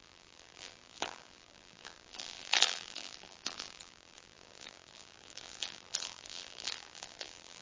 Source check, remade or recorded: remade